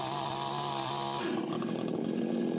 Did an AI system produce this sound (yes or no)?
no